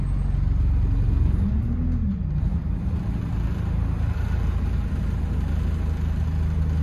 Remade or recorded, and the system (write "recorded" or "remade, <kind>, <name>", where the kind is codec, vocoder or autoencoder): recorded